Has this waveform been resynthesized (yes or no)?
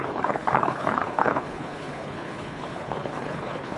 yes